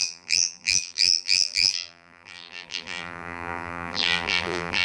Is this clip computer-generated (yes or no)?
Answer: yes